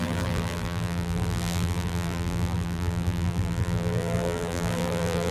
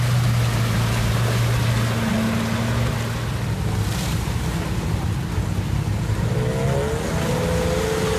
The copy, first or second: first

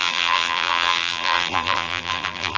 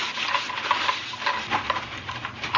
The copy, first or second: first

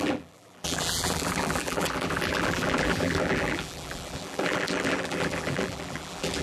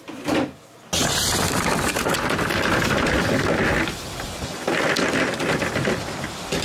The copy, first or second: first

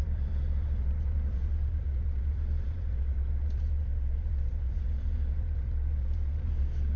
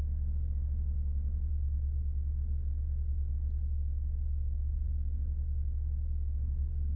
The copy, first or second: first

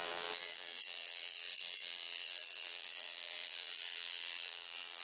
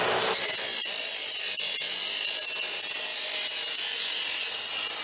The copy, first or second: first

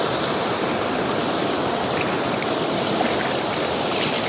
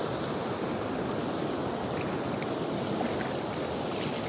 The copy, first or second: first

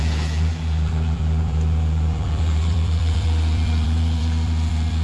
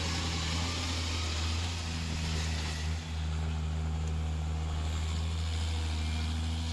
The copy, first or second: first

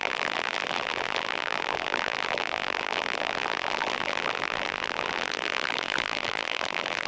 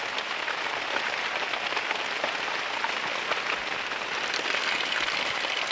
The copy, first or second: first